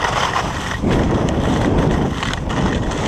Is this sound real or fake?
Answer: real